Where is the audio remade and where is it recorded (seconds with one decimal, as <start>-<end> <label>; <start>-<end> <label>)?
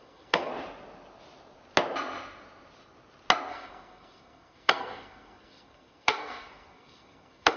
0.0-0.5 remade; 0.5-3.5 recorded; 3.5-7.6 remade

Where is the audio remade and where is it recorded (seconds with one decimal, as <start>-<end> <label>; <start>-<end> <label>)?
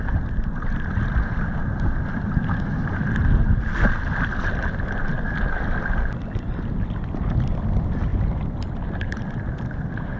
0.0-10.2 recorded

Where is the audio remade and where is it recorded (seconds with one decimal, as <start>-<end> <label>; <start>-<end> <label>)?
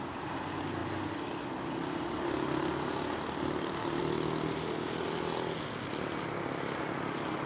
0.0-7.5 recorded